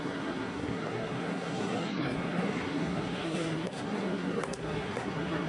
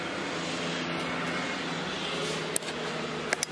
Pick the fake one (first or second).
first